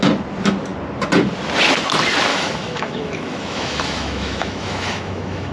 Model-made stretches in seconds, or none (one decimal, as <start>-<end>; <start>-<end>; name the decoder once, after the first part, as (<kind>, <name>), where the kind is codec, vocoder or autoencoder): 2.3-5.5 (autoencoder, DAC-VAE)